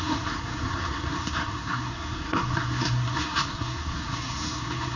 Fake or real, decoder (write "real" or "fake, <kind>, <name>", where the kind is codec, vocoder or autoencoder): fake, codec, SNAC